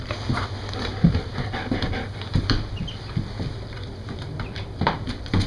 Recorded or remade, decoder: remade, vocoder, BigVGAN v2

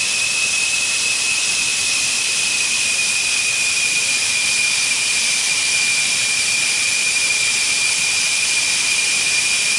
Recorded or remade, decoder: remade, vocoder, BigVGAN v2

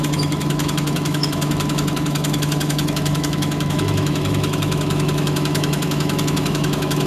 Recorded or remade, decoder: remade, autoencoder, DAC-VAE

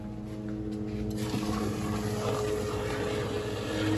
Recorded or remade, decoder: recorded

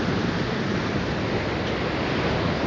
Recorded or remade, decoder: recorded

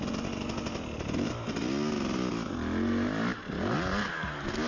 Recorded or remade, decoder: recorded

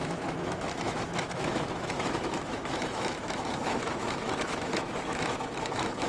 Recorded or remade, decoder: remade, autoencoder, DAC-VAE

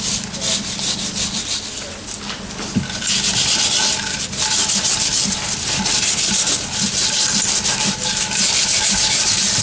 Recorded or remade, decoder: recorded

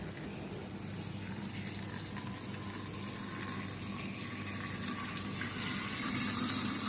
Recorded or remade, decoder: recorded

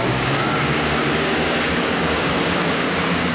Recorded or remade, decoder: remade, codec, DAC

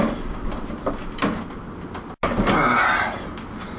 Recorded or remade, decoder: recorded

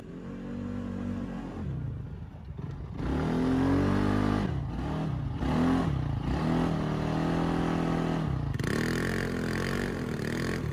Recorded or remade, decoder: recorded